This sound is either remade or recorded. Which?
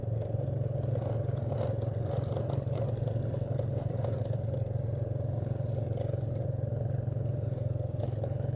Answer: recorded